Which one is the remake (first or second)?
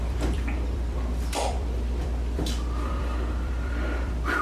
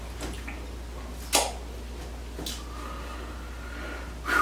first